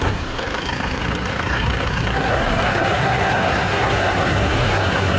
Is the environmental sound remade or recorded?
remade